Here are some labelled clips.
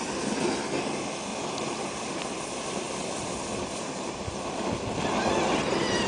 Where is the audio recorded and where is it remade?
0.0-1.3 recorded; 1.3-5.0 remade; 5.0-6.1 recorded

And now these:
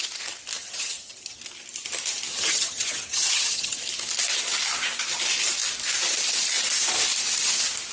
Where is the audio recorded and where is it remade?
0.0-0.6 recorded; 0.6-1.4 remade; 1.4-2.3 recorded; 2.3-3.8 remade; 3.8-7.9 recorded

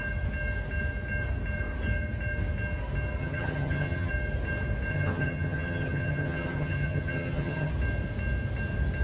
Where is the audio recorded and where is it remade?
0.0-3.2 recorded; 3.2-4.1 remade; 4.1-4.9 recorded; 4.9-7.7 remade; 7.7-9.0 recorded